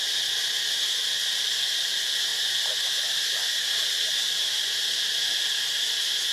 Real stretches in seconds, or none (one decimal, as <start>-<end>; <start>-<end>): 0.0-6.3

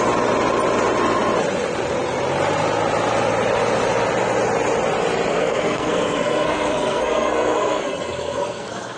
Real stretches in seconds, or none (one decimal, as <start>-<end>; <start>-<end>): 0.0-5.3